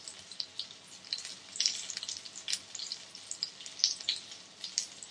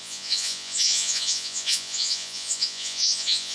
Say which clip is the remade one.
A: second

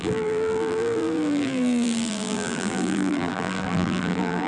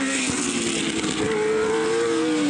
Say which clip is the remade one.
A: first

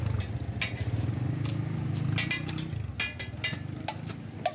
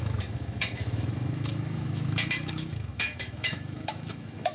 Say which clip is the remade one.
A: second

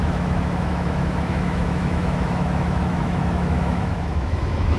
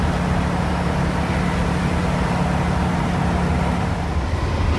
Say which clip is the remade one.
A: first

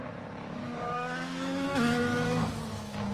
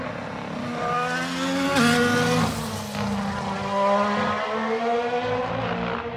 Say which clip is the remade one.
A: first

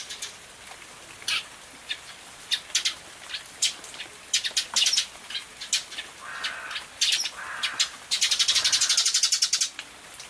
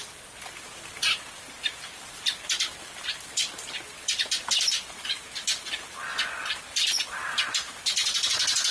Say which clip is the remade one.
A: second